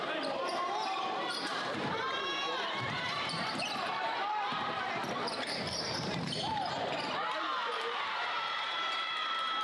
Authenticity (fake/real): fake